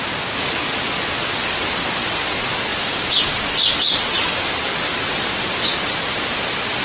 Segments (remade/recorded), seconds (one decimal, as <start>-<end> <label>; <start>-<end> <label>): 0.0-2.7 recorded; 2.7-3.4 remade; 3.4-6.8 recorded